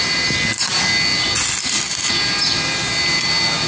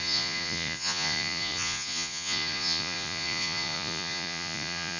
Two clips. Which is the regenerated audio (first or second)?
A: second